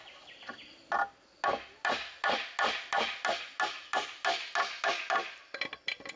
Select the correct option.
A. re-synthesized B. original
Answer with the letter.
B